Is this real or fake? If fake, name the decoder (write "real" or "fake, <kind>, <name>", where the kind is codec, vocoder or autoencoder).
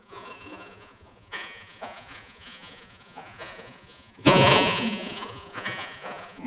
fake, vocoder, Vocos